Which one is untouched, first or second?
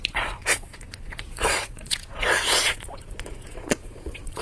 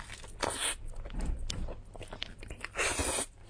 second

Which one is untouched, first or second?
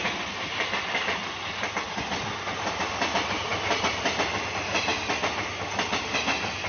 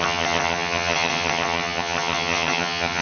first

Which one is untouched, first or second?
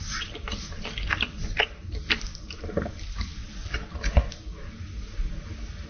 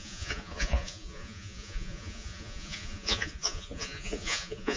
first